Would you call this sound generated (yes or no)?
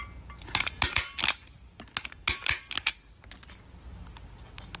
no